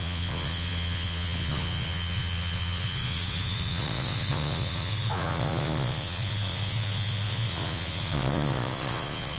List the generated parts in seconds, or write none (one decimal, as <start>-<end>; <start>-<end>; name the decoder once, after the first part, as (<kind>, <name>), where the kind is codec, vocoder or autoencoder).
0.0-9.4 (vocoder, Vocos)